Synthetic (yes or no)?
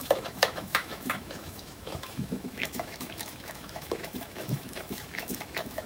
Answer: yes